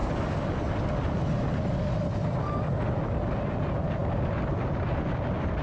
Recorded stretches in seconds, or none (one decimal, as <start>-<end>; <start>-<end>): 0.0-5.6